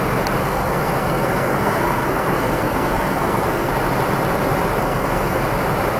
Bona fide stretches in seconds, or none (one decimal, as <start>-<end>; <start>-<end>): 0.0-0.4; 3.7-4.8; 5.4-6.0